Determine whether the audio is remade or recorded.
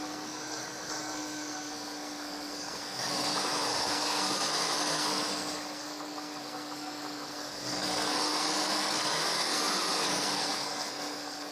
remade